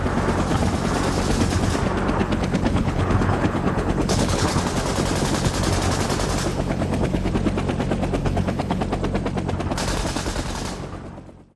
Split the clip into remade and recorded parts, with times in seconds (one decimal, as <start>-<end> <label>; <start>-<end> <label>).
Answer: 0.0-2.2 recorded; 2.2-4.6 remade; 4.6-6.5 recorded; 6.5-7.3 remade; 7.3-8.2 recorded; 8.2-8.8 remade; 8.8-11.6 recorded

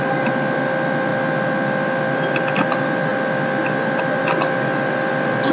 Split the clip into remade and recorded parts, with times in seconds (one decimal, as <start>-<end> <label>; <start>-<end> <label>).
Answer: 0.0-5.5 recorded